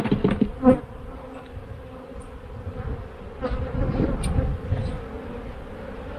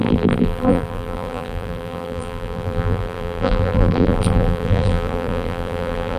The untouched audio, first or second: first